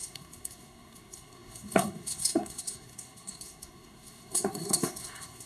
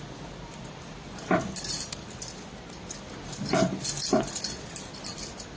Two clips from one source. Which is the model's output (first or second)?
first